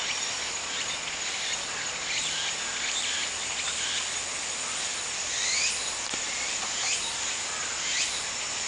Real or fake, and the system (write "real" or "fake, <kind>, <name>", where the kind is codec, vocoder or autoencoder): real